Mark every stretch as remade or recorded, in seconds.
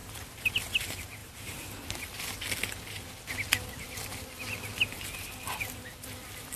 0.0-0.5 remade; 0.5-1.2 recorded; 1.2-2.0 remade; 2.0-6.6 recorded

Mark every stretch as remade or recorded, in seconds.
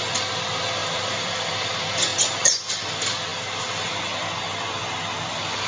0.0-0.8 recorded; 0.8-1.5 remade; 1.5-5.7 recorded